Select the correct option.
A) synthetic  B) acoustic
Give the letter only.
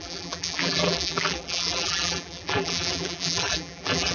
A